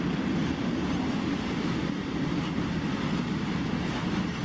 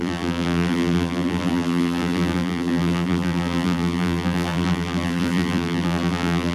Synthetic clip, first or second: second